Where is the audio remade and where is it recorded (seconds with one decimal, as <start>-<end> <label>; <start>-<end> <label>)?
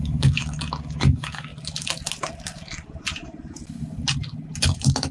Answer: 0.0-1.5 remade; 1.5-4.6 recorded; 4.6-5.1 remade